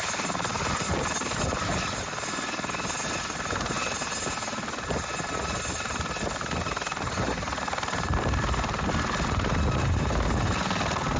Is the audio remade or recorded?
recorded